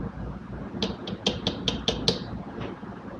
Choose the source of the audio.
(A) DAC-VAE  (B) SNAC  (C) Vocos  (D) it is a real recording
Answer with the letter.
D